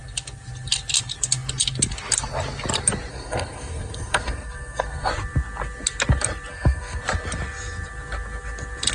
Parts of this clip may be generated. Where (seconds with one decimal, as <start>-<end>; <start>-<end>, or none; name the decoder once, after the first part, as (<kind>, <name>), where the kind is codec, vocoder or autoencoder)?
3.1-5.1 (codec, SNAC); 6.5-7.0